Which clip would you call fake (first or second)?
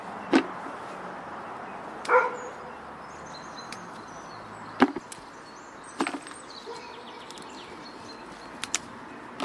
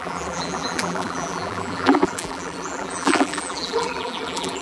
second